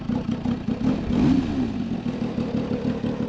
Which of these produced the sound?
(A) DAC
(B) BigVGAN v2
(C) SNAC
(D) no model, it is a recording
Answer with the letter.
D